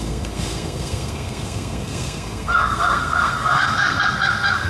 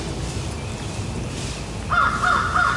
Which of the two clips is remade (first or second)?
first